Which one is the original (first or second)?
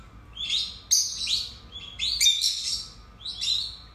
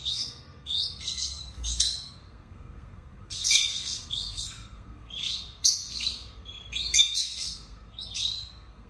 first